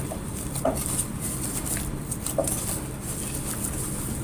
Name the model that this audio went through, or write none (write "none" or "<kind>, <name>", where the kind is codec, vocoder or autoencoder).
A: vocoder, BigVGAN v2